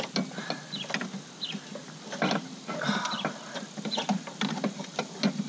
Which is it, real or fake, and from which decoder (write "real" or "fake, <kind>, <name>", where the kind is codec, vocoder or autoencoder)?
real